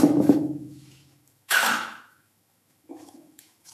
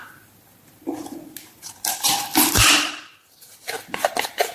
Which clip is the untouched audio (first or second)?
second